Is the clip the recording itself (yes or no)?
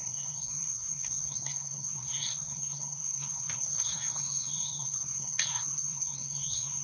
no